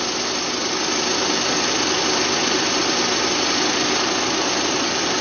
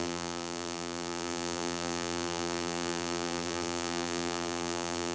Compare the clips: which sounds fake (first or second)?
second